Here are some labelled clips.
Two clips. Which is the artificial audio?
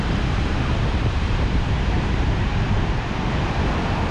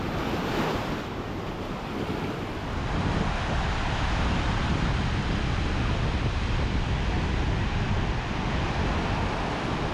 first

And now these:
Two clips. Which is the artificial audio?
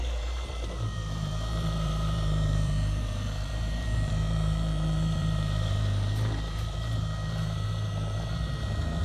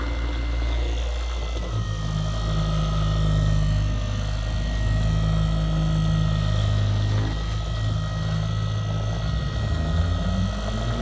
first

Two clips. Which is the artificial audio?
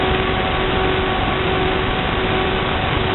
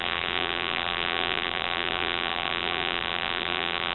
second